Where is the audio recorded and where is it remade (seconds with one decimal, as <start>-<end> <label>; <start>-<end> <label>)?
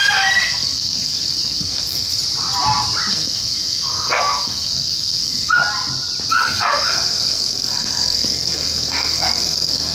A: 0.0-2.2 remade; 2.2-3.1 recorded; 3.1-5.6 remade; 5.6-6.3 recorded; 6.3-9.9 remade